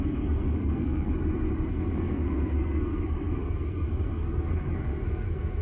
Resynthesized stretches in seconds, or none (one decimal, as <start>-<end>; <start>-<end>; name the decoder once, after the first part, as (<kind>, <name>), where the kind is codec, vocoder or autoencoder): 0.0-1.1 (codec, SNAC); 1.7-5.6